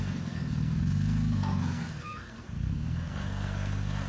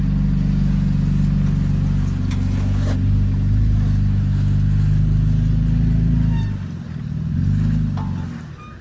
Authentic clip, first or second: second